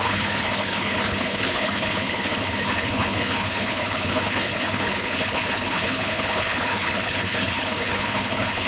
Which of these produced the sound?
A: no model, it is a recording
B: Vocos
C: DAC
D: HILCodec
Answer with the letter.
D